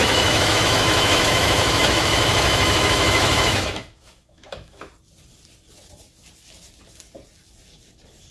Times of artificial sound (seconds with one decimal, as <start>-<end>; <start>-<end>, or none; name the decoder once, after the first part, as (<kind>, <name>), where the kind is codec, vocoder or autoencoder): 0.0-4.9 (autoencoder, DAC-VAE)